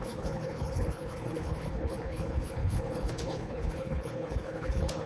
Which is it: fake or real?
fake